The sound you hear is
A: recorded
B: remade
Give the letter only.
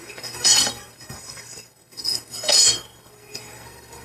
B